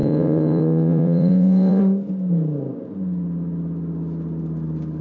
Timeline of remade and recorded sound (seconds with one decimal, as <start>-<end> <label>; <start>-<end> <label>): 0.0-1.8 remade; 1.8-5.0 recorded